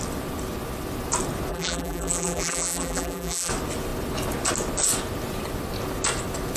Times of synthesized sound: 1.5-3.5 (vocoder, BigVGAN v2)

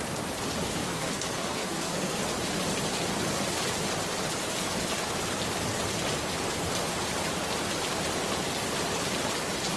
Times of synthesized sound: 0.8-2.2 (codec, SNAC)

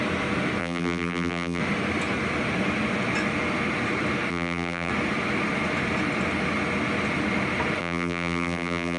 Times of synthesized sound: 0.6-1.6 (vocoder, BigVGAN v2); 4.3-4.9; 7.8-9.0

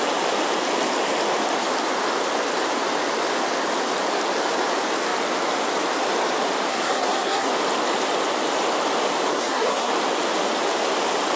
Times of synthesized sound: 6.7-7.5 (codec, SNAC); 9.3-9.9